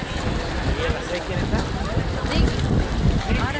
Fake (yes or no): no